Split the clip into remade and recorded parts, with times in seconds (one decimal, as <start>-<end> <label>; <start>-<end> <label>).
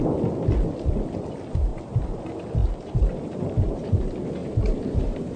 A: 0.0-1.7 recorded; 1.7-2.2 remade; 2.2-2.6 recorded; 2.6-3.9 remade; 3.9-4.4 recorded; 4.4-5.4 remade